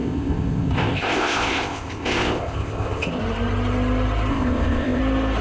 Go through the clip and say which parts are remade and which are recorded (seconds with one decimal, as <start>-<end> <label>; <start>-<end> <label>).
0.0-3.2 remade; 3.2-4.3 recorded; 4.3-5.0 remade; 5.0-5.4 recorded